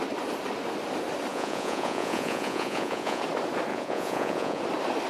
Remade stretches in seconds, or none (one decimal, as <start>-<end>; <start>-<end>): 1.3-3.2; 3.7-4.6